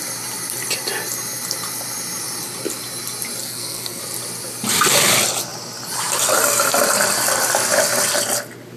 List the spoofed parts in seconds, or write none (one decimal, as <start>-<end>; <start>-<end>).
3.4-4.0